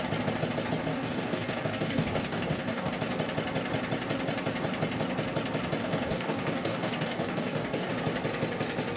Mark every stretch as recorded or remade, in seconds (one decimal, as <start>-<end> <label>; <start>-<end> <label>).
0.0-0.9 recorded; 0.9-2.9 remade; 2.9-5.8 recorded; 5.8-7.9 remade; 7.9-9.0 recorded